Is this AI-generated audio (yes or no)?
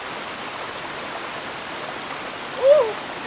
no